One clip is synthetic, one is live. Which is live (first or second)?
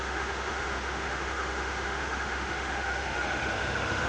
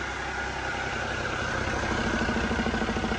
second